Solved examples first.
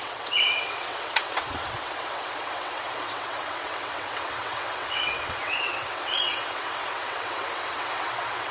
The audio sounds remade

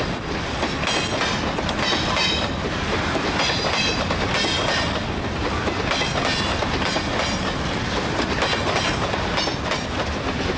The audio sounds recorded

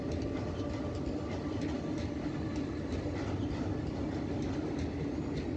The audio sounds recorded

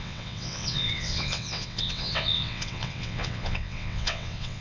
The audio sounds remade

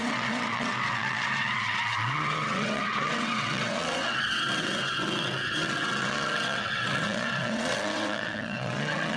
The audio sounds remade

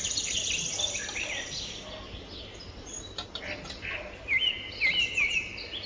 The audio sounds recorded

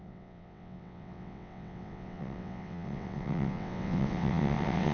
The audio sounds remade